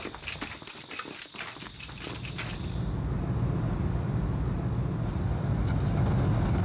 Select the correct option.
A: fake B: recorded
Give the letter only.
B